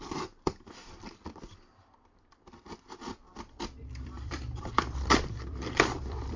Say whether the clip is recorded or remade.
remade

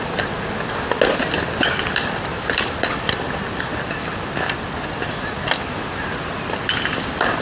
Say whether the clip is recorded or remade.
recorded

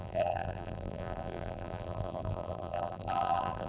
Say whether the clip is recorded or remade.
remade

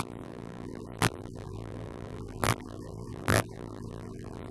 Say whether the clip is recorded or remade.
remade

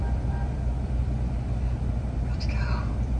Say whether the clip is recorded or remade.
remade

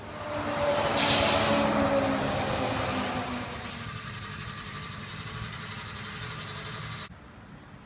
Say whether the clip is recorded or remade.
recorded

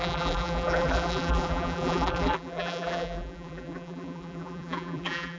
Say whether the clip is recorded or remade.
remade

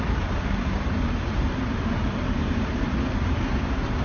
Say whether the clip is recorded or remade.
remade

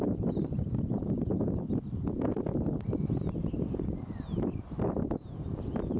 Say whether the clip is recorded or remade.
remade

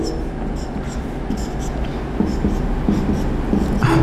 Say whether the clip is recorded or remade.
recorded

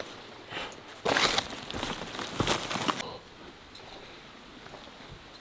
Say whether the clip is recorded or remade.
recorded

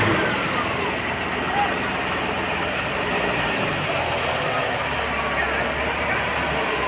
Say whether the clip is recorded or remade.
recorded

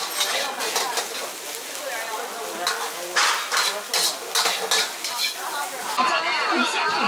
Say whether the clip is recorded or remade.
recorded